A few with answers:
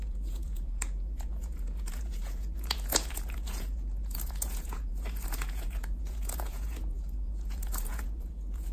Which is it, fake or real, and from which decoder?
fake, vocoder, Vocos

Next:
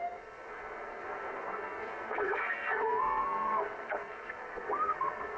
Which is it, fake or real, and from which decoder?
fake, codec, SNAC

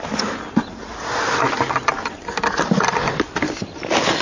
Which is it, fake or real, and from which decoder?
real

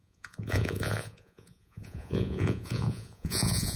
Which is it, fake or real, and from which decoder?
fake, vocoder, Vocos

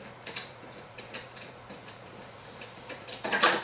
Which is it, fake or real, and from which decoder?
fake, vocoder, Vocos